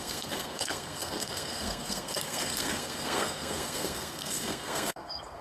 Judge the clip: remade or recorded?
remade